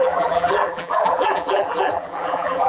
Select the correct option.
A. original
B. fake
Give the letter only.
B